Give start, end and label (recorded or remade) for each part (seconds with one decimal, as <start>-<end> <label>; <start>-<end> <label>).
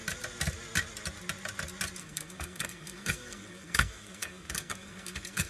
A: 0.0-2.0 recorded; 2.0-5.5 remade